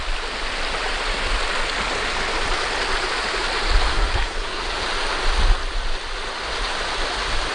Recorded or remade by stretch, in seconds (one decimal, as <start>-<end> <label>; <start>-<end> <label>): 0.0-3.9 recorded; 3.9-4.6 remade; 4.6-7.5 recorded